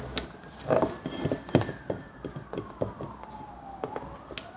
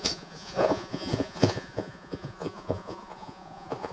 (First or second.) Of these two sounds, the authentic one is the first